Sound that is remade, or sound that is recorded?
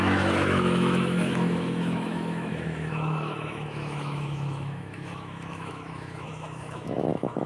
remade